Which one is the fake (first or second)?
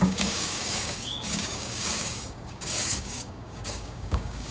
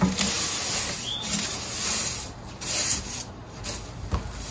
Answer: first